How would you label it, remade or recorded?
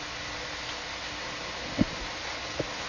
recorded